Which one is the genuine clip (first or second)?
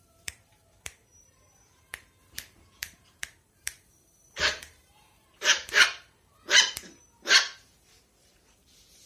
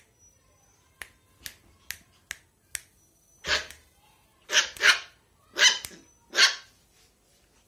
second